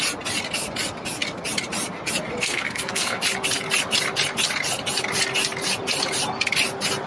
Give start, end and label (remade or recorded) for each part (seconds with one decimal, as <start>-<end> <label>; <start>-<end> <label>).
0.0-2.4 recorded; 2.4-3.2 remade; 3.2-7.1 recorded